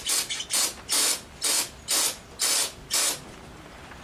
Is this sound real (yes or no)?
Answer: yes